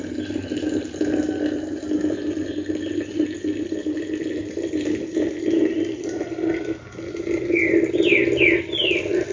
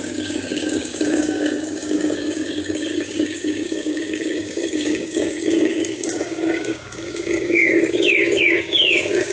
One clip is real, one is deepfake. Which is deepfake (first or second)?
second